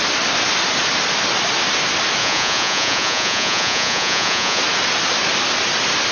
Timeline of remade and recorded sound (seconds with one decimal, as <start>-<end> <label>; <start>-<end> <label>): 0.0-2.2 recorded; 2.2-4.6 remade; 4.6-6.1 recorded